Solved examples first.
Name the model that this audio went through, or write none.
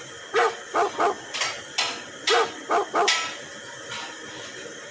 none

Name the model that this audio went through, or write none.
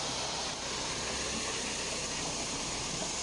none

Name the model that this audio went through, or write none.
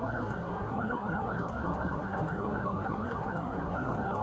codec, SNAC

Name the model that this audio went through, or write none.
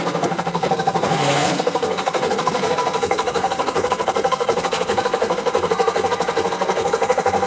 codec, SNAC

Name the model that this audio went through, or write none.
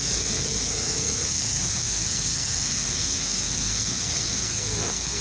codec, SNAC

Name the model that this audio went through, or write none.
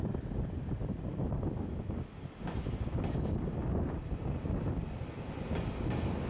none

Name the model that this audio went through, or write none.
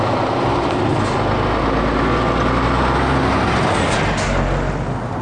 none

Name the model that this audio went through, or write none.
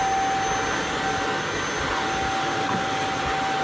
none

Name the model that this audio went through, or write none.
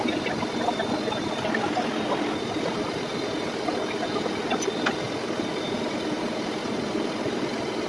none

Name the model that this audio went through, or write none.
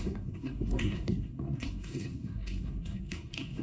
codec, SNAC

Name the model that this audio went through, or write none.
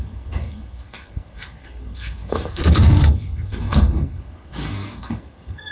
codec, SNAC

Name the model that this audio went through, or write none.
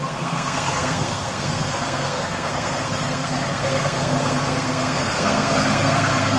codec, SNAC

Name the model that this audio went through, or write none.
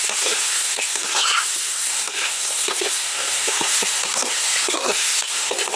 codec, SNAC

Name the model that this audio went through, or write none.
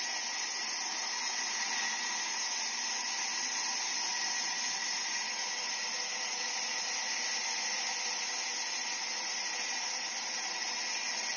none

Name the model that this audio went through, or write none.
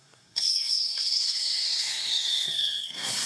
codec, SNAC